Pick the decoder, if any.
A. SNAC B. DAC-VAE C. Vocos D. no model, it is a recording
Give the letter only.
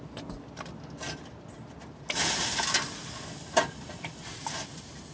D